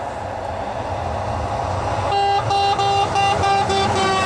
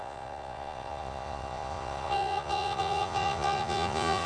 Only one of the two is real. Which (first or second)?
first